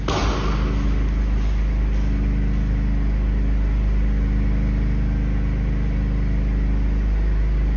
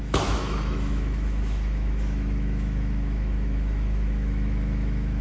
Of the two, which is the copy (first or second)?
second